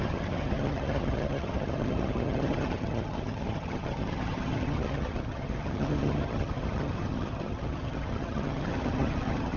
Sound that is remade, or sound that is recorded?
remade